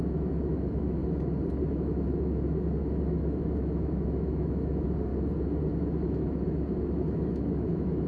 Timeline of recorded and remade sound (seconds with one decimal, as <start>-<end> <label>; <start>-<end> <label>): 0.0-1.0 remade; 1.0-1.7 recorded; 1.7-5.1 remade; 5.1-5.6 recorded; 5.6-8.1 remade

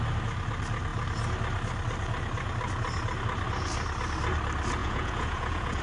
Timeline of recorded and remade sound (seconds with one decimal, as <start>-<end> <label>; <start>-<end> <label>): 0.0-4.8 recorded; 4.8-5.8 remade

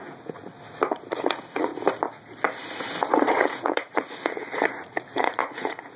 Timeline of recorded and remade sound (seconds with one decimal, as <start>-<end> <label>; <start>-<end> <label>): 0.0-0.4 remade; 0.4-1.1 recorded; 1.1-1.7 remade; 1.7-3.0 recorded; 3.0-6.0 remade

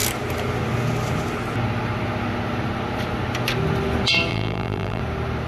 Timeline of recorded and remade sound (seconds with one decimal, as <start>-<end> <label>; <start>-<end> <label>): 0.0-4.3 recorded; 4.3-5.0 remade; 5.0-5.5 recorded

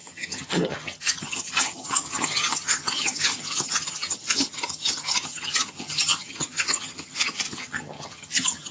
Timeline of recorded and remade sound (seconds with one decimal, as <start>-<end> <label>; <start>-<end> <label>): 0.0-8.7 remade